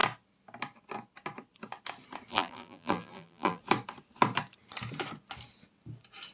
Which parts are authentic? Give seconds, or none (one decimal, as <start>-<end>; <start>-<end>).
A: 0.0-2.3; 3.6-6.3